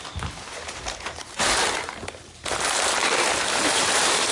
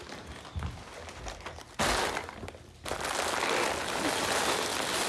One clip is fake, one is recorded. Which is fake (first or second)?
first